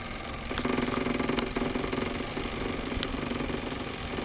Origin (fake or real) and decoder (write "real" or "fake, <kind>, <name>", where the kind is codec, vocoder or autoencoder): real